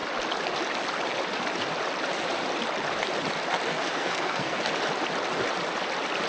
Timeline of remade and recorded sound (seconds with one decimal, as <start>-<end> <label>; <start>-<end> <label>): 0.0-3.7 recorded; 3.7-4.6 remade; 4.6-6.3 recorded